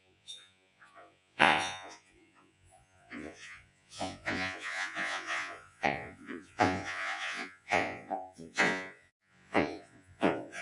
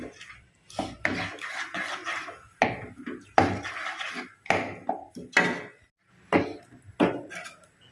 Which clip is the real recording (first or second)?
second